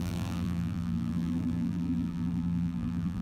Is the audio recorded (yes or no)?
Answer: no